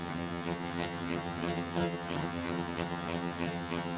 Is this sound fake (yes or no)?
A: yes